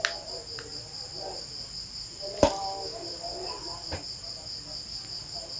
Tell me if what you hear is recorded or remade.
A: recorded